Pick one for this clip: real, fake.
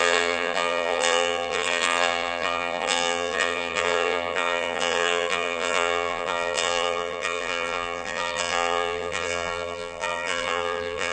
fake